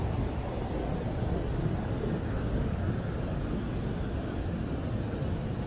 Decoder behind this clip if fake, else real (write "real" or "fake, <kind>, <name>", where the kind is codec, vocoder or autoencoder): real